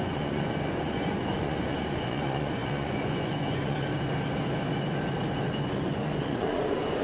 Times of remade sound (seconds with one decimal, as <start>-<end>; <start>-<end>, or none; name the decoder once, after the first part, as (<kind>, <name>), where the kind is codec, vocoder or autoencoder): 0.0-3.9 (vocoder, Vocos); 5.5-7.0